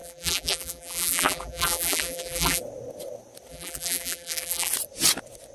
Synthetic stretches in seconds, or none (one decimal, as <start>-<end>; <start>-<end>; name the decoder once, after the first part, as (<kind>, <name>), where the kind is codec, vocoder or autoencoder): 0.0-2.6 (vocoder, BigVGAN v2); 3.5-4.7